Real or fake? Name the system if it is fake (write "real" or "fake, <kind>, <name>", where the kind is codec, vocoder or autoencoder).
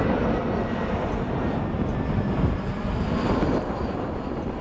real